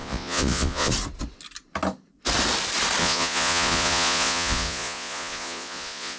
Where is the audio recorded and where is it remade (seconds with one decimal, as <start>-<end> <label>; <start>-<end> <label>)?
0.0-0.9 remade; 0.9-3.0 recorded; 3.0-6.2 remade